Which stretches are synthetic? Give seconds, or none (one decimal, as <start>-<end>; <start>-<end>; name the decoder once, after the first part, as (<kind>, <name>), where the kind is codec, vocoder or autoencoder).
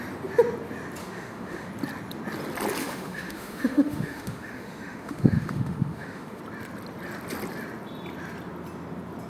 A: 1.0-1.7 (autoencoder, DAC-VAE); 2.8-6.4